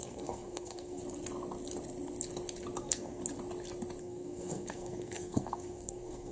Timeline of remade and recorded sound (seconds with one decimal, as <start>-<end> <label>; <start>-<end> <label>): 0.0-1.0 remade; 1.0-2.8 recorded; 2.8-3.2 remade; 3.2-4.0 recorded; 4.0-6.3 remade